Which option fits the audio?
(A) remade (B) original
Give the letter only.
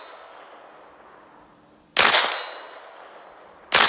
B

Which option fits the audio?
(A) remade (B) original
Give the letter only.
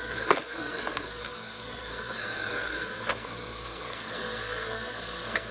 A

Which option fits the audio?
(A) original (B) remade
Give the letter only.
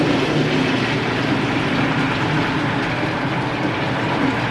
A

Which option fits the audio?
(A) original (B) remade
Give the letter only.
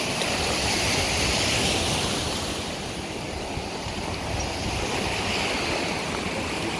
A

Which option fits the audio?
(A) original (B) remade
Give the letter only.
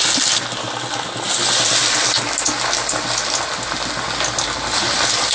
A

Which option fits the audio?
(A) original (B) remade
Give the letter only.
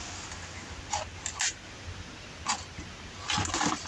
A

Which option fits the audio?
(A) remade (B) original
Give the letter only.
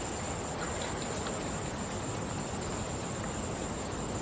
B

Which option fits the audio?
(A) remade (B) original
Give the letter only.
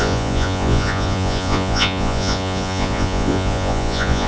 A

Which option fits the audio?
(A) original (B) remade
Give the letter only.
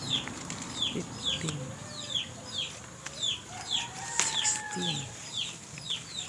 B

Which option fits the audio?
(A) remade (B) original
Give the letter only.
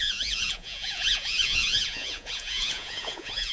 A